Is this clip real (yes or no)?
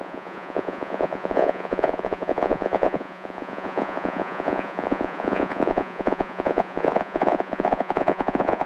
no